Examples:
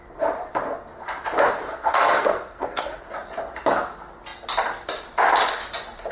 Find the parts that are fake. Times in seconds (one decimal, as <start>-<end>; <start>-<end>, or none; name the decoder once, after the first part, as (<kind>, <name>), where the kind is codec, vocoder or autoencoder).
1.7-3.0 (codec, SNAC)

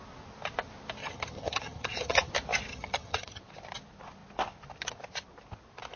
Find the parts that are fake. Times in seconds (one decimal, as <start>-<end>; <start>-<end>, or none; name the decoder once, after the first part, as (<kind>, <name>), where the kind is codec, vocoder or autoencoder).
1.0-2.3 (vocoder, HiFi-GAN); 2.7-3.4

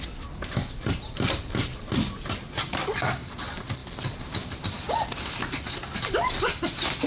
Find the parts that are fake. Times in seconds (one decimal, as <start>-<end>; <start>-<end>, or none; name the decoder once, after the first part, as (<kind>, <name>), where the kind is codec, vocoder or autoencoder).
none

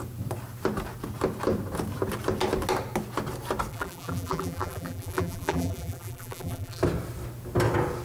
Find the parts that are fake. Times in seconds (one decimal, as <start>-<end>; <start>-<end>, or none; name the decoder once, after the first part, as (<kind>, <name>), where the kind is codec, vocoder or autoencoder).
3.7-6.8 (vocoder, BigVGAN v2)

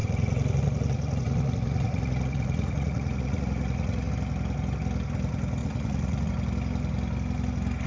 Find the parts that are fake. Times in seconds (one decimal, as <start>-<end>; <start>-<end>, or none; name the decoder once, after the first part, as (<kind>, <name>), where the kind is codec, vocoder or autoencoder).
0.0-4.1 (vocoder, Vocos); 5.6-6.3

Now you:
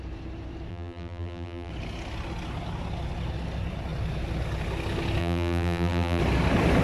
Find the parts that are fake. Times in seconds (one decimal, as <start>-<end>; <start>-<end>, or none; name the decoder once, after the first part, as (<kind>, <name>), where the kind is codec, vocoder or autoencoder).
0.7-1.7 (vocoder, BigVGAN v2); 5.2-6.2

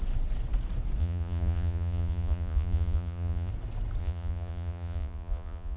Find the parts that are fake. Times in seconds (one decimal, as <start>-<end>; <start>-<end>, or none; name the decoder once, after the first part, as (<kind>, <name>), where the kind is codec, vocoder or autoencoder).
1.0-3.5 (vocoder, Vocos); 4.0-5.8

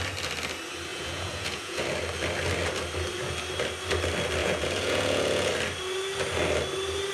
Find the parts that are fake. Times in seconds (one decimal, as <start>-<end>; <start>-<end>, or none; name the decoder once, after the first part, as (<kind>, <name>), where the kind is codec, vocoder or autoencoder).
0.9-1.8 (vocoder, Vocos); 4.4-5.5